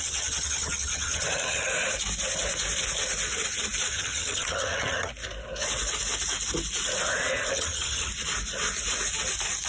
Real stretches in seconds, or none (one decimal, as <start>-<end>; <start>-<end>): 1.7-3.9; 5.1-7.5; 8.1-9.7